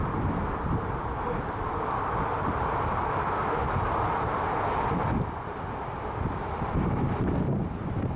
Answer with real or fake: real